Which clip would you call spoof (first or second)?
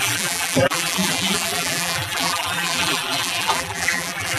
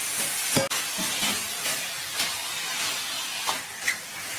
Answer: first